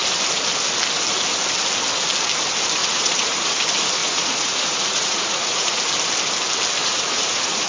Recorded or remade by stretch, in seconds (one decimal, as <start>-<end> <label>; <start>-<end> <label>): 0.0-2.8 recorded; 2.8-3.6 remade; 3.6-4.0 recorded; 4.0-5.8 remade; 5.8-6.8 recorded; 6.8-7.7 remade